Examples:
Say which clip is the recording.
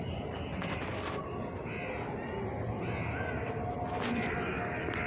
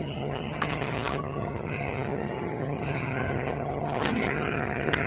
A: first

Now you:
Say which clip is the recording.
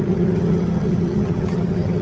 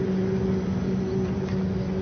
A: second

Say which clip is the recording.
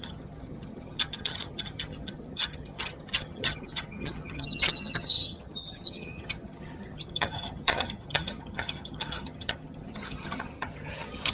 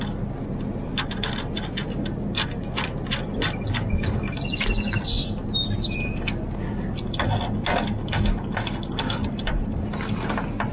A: second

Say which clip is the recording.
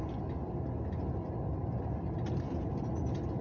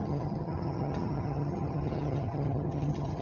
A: first